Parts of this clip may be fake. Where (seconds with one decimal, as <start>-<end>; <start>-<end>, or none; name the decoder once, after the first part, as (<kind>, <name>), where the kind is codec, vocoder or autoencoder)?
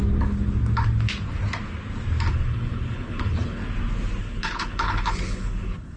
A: 2.3-3.6 (codec, HILCodec); 4.2-6.0